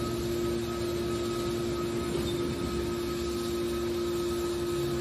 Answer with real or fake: real